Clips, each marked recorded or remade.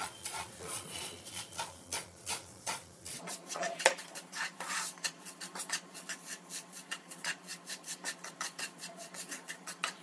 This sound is remade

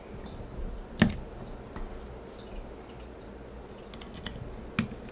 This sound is recorded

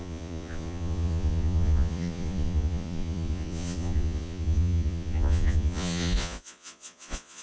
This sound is remade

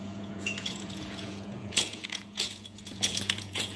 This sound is remade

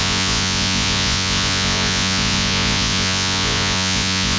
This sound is remade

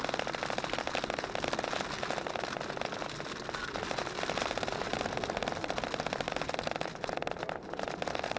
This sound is recorded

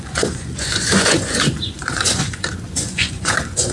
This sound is remade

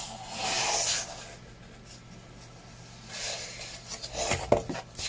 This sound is recorded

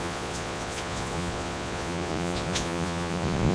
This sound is remade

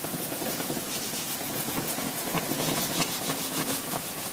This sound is remade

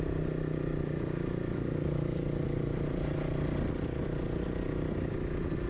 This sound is recorded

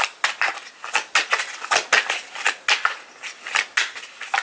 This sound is recorded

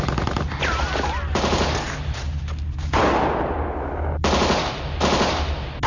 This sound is recorded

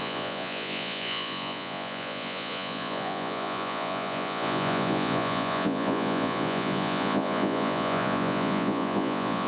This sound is remade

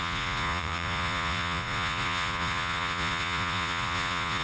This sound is remade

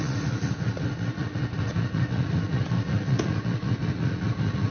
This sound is remade